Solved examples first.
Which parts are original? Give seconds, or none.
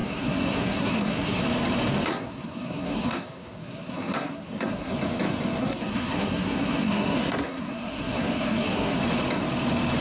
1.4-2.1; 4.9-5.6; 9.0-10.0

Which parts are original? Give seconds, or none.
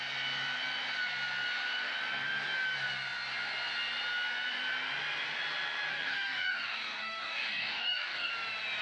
0.0-5.9; 8.3-8.8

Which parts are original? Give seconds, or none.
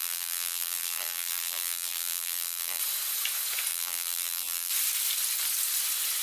2.8-3.7; 4.7-6.2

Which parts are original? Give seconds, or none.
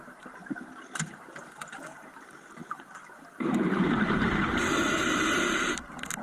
none